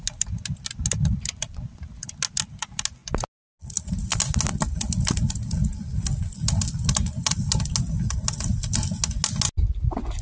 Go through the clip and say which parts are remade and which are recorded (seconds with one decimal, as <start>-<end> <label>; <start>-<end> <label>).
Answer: 0.0-10.2 recorded